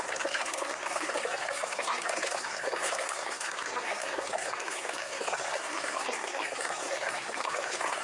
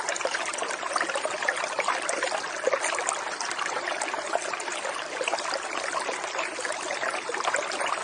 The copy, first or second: first